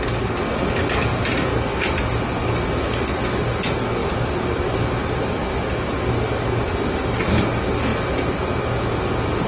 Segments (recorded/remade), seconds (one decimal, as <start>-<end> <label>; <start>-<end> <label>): 0.0-1.1 recorded; 1.1-2.0 remade; 2.0-4.0 recorded; 4.0-6.0 remade; 6.0-9.5 recorded